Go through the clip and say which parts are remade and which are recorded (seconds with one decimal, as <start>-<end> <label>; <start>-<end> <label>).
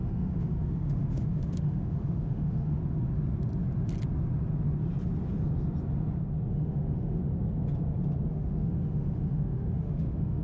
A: 0.0-2.8 remade; 2.8-6.5 recorded; 6.5-7.2 remade; 7.2-8.3 recorded; 8.3-10.4 remade